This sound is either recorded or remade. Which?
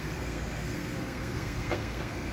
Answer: remade